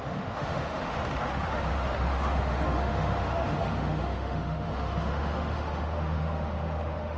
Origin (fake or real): fake